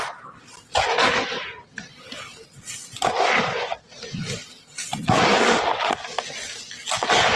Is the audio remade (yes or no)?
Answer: no